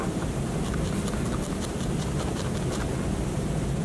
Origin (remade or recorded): recorded